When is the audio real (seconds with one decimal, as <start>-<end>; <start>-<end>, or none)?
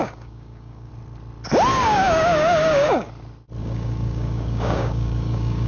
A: 0.9-1.7; 3.1-3.6